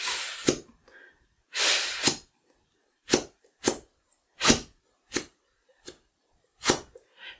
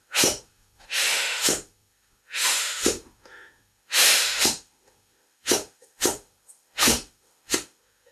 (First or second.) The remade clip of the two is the second